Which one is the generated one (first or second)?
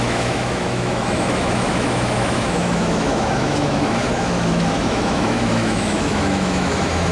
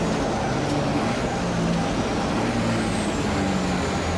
first